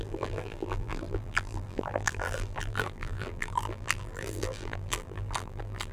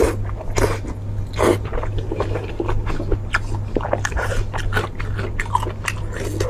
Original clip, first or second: second